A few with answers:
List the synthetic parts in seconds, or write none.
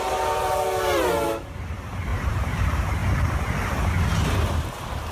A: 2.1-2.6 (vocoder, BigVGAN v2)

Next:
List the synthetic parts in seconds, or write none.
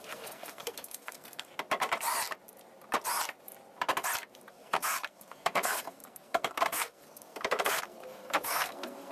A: 0.0-1.5 (codec, SNAC); 4.5-9.1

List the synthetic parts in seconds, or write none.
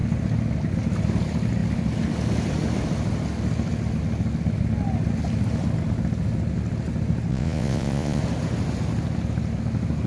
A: 7.3-8.2 (vocoder, Vocos)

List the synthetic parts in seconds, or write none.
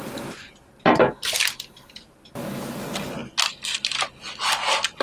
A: none